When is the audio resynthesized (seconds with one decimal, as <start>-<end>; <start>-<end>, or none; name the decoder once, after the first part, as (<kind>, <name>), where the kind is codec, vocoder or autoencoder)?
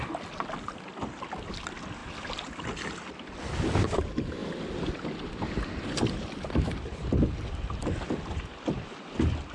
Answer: none